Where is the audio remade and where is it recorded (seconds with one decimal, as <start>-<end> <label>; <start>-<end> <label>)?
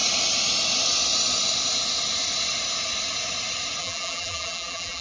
0.0-3.8 recorded; 3.8-5.0 remade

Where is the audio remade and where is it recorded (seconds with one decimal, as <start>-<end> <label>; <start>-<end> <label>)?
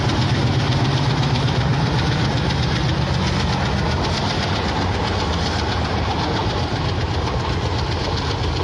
0.0-6.4 recorded; 6.4-6.9 remade; 6.9-8.6 recorded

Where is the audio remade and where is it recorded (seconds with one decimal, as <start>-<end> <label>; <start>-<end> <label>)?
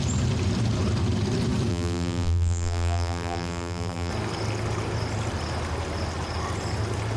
0.0-1.7 recorded; 1.7-4.1 remade; 4.1-7.2 recorded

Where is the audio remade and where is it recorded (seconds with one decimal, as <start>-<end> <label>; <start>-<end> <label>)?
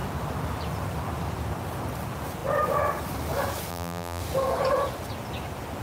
0.0-3.7 recorded; 3.7-4.2 remade; 4.2-5.8 recorded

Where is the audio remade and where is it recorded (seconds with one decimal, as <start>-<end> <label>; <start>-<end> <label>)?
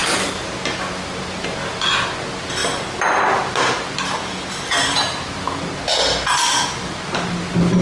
0.0-7.8 recorded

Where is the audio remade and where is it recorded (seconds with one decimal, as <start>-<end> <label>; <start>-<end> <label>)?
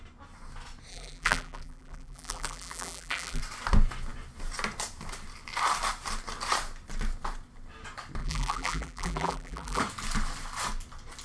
0.0-0.9 recorded; 0.9-3.4 remade; 3.4-8.2 recorded; 8.2-9.8 remade; 9.8-11.2 recorded